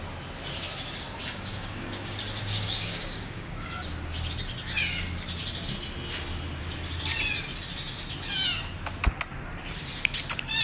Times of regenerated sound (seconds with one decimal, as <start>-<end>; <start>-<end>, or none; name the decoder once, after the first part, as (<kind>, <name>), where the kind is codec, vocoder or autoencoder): 1.2-3.7 (codec, DAC)